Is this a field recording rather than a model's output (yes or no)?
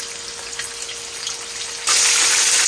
yes